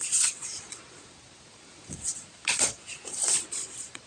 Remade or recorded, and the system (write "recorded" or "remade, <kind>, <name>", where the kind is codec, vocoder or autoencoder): remade, vocoder, Vocos